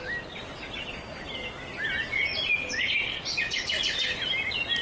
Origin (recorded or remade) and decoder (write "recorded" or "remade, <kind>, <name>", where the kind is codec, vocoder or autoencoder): recorded